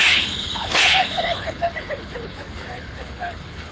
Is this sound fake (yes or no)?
yes